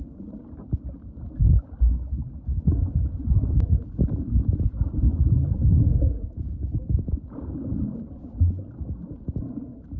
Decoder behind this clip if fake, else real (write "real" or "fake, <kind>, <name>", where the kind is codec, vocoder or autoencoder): real